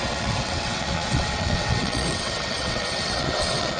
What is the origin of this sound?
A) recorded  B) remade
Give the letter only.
B